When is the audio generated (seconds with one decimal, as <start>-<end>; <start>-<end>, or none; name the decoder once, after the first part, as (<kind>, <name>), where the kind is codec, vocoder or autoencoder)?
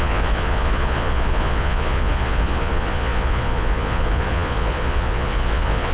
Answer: 0.0-5.9 (vocoder, Vocos)